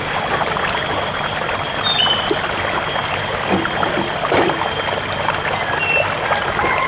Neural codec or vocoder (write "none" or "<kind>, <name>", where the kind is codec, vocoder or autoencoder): none